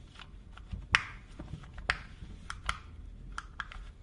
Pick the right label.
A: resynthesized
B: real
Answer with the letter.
B